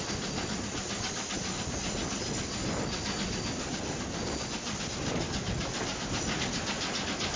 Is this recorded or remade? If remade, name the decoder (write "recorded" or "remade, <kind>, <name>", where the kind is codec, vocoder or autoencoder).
recorded